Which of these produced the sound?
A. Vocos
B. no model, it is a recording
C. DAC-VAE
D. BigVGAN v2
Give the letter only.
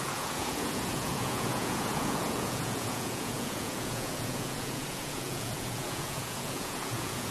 A